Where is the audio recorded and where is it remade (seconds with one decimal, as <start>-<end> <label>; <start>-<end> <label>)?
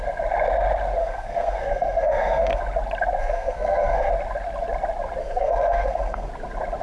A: 0.0-1.0 recorded; 1.0-2.6 remade; 2.6-3.2 recorded; 3.2-4.1 remade; 4.1-5.2 recorded; 5.2-6.3 remade; 6.3-6.8 recorded